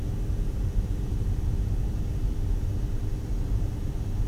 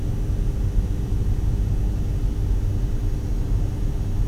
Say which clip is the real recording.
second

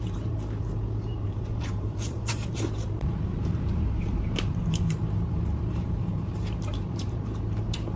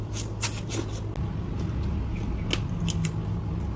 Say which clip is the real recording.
second